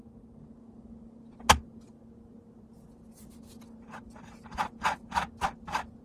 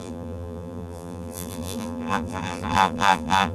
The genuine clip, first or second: first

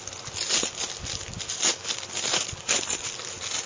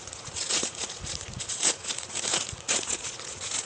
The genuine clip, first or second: first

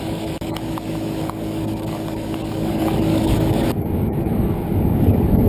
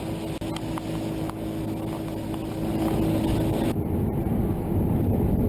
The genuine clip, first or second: second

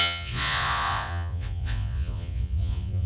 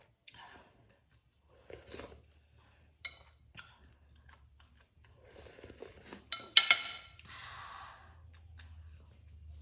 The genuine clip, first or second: second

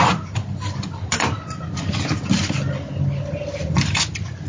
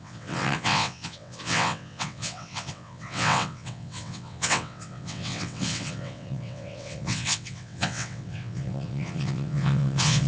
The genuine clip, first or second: first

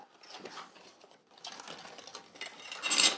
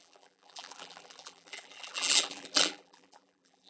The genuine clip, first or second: first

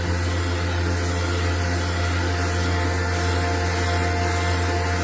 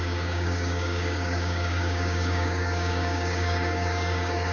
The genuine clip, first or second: first